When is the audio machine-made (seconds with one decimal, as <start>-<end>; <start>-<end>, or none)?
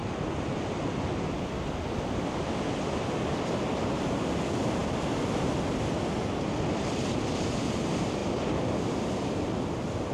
none